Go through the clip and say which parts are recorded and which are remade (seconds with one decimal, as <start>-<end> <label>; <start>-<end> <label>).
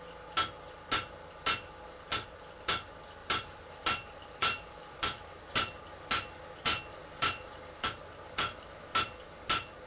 0.0-3.2 recorded; 3.2-5.4 remade; 5.4-7.0 recorded; 7.0-8.0 remade; 8.0-9.9 recorded